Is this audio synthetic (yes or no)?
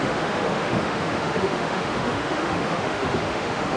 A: yes